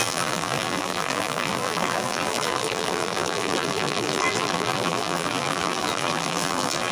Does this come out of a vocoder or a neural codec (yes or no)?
yes